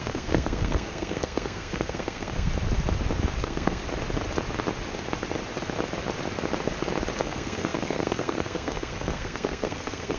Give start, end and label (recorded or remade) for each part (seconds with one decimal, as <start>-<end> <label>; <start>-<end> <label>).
0.0-2.5 remade; 2.5-3.4 recorded; 3.4-3.8 remade; 3.8-7.2 recorded; 7.2-10.2 remade